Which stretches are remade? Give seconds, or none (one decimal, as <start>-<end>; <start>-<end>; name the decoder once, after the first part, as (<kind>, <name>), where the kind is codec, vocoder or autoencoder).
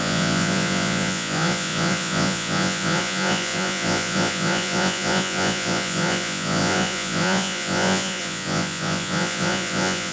0.0-10.1 (vocoder, Vocos)